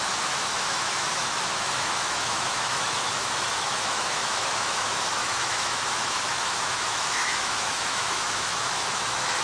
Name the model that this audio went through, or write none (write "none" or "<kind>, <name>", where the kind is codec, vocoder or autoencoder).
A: autoencoder, DAC-VAE